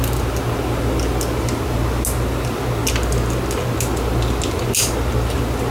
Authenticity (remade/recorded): recorded